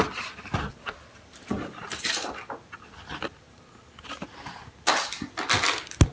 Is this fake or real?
real